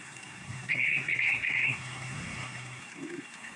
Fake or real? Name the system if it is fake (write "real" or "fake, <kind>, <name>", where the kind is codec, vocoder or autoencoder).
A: fake, codec, SNAC